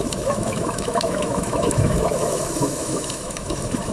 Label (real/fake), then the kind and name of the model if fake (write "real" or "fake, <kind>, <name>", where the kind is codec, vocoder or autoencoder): fake, autoencoder, DAC-VAE